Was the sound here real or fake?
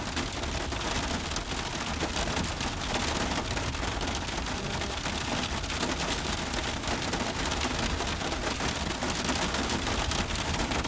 real